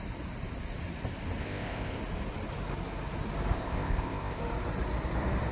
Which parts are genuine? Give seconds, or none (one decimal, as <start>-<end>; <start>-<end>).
0.0-1.4; 2.0-3.5; 4.4-5.5